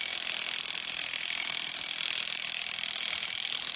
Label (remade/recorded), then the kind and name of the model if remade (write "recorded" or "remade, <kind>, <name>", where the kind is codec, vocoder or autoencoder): recorded